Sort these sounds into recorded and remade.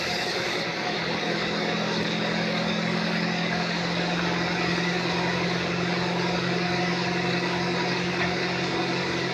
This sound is remade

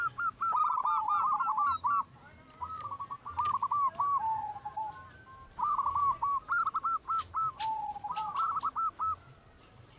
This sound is recorded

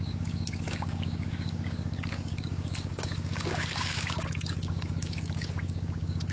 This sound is remade